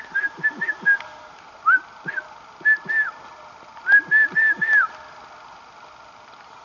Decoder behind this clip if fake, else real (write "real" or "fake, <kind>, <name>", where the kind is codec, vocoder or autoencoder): real